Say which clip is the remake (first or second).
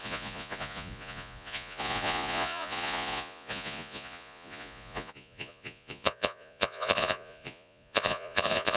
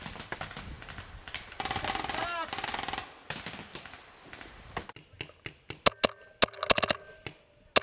first